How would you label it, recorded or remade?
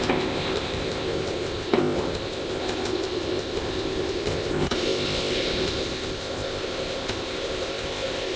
remade